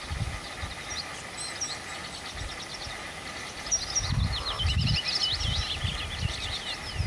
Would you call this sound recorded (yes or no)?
yes